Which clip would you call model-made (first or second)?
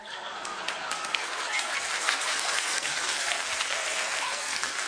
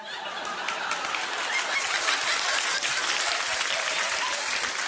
first